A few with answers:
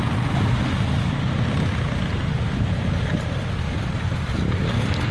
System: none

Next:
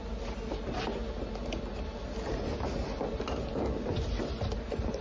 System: none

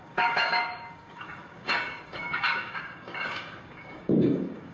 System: codec, DAC